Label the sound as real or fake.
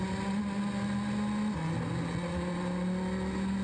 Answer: real